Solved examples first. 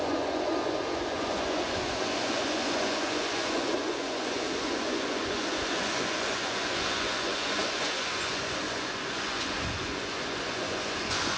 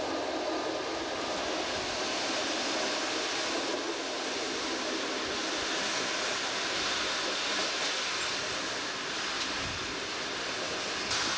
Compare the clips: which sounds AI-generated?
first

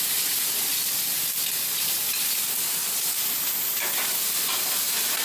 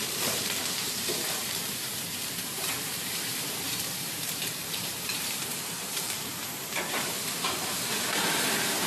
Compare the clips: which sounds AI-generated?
second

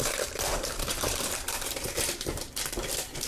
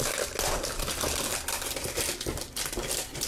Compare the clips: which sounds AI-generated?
first